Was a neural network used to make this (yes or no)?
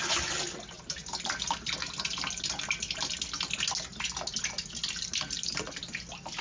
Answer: no